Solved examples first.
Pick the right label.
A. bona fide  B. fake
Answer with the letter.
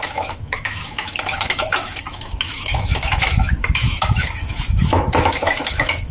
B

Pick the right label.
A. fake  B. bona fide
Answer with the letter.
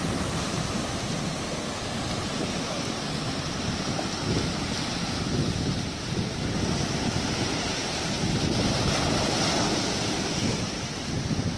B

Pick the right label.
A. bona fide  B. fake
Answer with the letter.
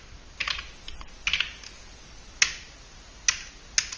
A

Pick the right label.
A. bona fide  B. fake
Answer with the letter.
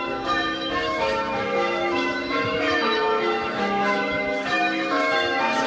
B